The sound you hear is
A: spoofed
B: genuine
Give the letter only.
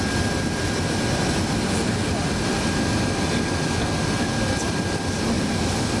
B